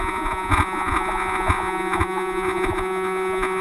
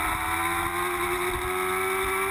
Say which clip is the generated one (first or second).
first